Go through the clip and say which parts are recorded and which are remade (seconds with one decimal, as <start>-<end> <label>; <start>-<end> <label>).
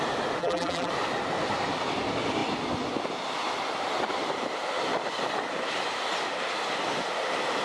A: 0.0-0.4 recorded; 0.4-0.9 remade; 0.9-7.6 recorded